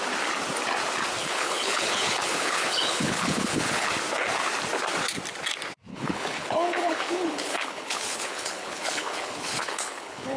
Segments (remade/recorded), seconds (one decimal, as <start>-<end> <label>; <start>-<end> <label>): 0.0-1.2 recorded; 1.2-3.9 remade; 3.9-5.9 recorded; 5.9-10.4 remade

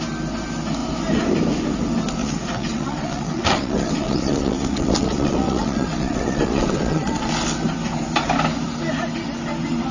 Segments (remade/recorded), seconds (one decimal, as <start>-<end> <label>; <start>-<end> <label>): 0.0-2.2 recorded; 2.2-7.3 remade; 7.3-9.9 recorded

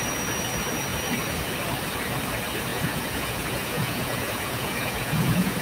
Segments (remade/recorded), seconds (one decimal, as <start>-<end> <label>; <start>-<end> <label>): 0.0-2.7 recorded; 2.7-5.6 remade